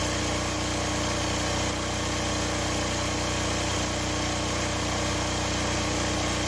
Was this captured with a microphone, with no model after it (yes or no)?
yes